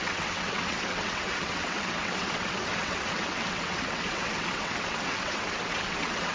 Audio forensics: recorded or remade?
remade